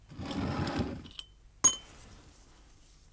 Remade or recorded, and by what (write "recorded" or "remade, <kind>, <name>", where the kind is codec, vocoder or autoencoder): recorded